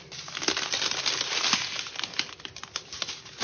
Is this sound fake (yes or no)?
no